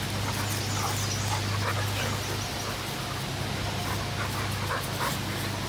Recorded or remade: recorded